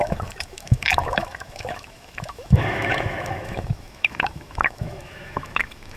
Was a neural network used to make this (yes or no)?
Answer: yes